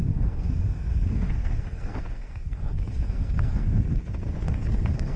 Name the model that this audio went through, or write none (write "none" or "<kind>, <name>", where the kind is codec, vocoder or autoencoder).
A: codec, SNAC